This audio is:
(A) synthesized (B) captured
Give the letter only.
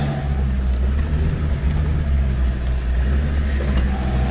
B